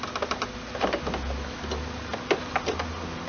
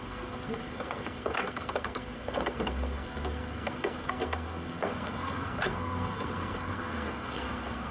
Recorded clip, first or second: first